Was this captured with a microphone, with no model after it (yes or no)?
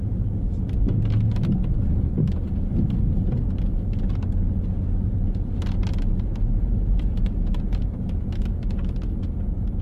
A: yes